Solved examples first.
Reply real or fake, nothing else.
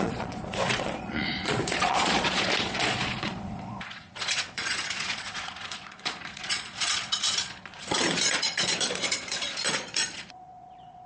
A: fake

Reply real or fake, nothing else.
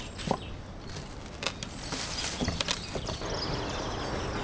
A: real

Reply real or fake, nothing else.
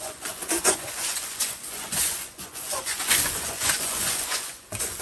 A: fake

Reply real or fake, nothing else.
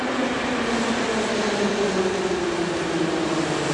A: real